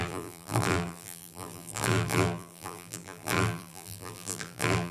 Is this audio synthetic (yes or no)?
yes